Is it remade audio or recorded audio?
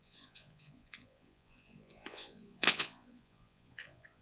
remade